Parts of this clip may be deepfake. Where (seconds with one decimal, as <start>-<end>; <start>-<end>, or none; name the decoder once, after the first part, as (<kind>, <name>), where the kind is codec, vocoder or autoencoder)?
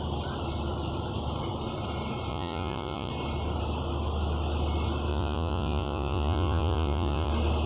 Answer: 2.3-3.1 (vocoder, Vocos); 5.1-7.3